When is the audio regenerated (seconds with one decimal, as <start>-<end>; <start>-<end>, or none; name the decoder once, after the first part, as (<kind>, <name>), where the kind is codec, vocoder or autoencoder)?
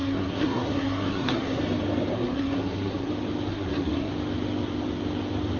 0.0-1.6 (codec, SNAC); 2.1-3.1; 3.5-4.1